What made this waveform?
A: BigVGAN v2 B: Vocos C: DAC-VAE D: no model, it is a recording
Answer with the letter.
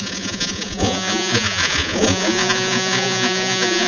B